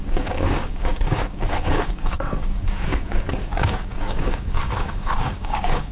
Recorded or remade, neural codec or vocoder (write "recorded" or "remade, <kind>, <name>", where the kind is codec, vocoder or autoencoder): remade, codec, DAC